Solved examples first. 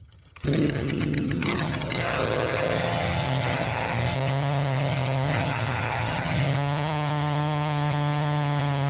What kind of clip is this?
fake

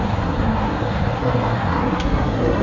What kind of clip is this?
fake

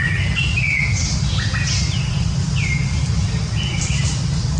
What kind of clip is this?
real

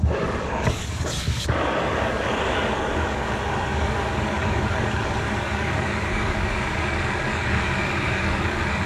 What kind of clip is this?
fake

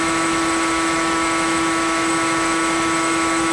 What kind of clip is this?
fake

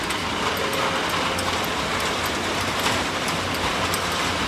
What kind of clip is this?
real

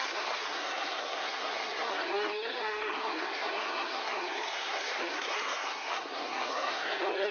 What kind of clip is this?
fake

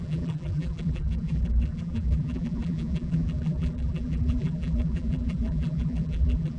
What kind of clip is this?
fake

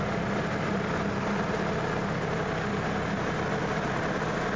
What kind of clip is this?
real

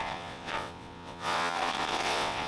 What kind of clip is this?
fake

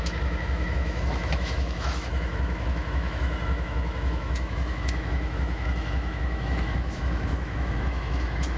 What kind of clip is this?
fake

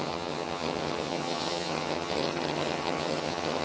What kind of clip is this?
fake